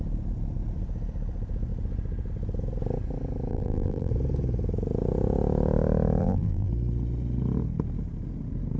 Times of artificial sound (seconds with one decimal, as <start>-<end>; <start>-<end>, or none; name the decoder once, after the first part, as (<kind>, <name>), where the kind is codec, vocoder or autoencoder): 3.5-4.1 (vocoder, BigVGAN v2); 6.2-6.7